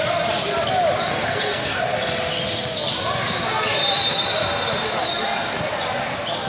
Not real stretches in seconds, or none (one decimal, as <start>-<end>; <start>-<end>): 1.1-1.8